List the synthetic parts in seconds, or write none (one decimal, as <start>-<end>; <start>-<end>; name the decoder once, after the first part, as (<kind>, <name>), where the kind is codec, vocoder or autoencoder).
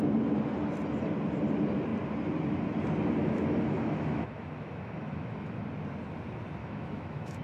3.2-5.6 (autoencoder, DAC-VAE); 6.6-7.4